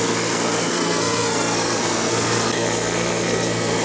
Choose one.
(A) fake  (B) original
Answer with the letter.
A